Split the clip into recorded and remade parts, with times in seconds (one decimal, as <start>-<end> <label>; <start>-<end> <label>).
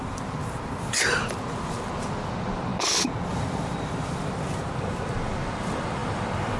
0.0-2.7 remade; 2.7-3.3 recorded; 3.3-6.6 remade